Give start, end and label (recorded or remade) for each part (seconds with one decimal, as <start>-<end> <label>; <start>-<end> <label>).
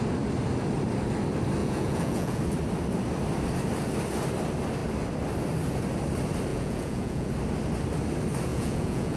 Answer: 0.0-1.6 recorded; 1.6-2.4 remade; 2.4-6.5 recorded; 6.5-7.3 remade; 7.3-8.5 recorded; 8.5-9.2 remade